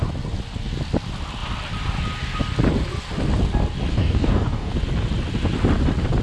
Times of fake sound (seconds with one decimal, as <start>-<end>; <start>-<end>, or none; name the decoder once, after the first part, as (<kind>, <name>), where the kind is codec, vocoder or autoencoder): 3.9-4.7 (codec, DAC)